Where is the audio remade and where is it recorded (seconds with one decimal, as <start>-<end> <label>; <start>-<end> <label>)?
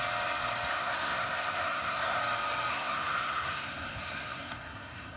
0.0-0.7 recorded; 0.7-2.2 remade; 2.2-2.7 recorded; 2.7-5.2 remade